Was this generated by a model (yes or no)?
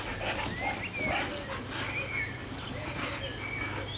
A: no